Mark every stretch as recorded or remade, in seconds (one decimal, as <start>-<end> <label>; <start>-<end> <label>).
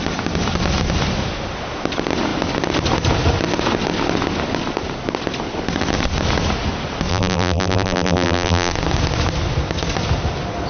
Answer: 0.0-7.1 recorded; 7.1-8.7 remade; 8.7-10.7 recorded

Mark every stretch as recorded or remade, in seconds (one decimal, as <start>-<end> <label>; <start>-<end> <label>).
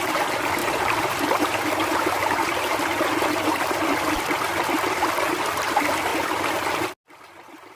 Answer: 0.0-0.6 recorded; 0.6-2.8 remade; 2.8-7.8 recorded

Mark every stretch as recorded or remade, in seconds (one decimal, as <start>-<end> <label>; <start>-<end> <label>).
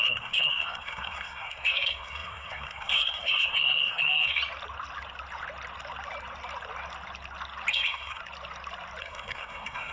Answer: 0.0-4.4 remade; 4.4-7.7 recorded; 7.7-8.2 remade; 8.2-9.0 recorded; 9.0-9.9 remade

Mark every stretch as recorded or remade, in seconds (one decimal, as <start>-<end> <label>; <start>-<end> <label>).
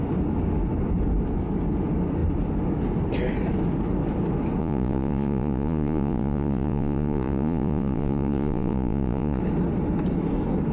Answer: 0.0-4.6 recorded; 4.6-9.4 remade; 9.4-10.7 recorded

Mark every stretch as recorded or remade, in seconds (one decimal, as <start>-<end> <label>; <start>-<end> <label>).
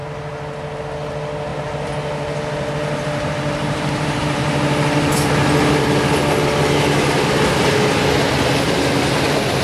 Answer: 0.0-1.5 recorded; 1.5-5.3 remade; 5.3-9.6 recorded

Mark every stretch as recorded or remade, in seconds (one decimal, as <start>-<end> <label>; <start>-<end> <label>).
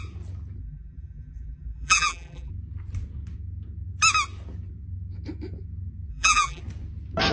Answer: 0.0-0.6 recorded; 0.6-2.5 remade; 2.5-6.1 recorded; 6.1-6.6 remade; 6.6-7.3 recorded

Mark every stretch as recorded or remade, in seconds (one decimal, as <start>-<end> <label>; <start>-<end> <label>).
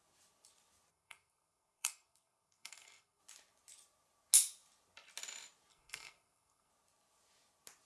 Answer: 0.0-0.9 recorded; 0.9-3.2 remade; 3.2-5.7 recorded; 5.7-6.7 remade; 6.7-7.9 recorded